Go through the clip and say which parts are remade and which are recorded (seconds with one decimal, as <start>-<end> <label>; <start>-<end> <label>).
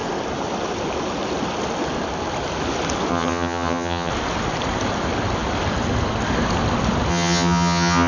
0.0-3.1 recorded; 3.1-4.1 remade; 4.1-7.1 recorded; 7.1-8.1 remade